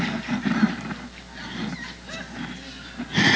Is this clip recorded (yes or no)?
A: yes